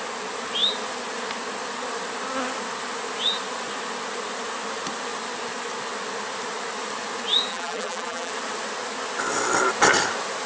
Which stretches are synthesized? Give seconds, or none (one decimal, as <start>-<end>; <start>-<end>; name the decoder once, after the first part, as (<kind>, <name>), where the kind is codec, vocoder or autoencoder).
7.5-8.3 (vocoder, BigVGAN v2)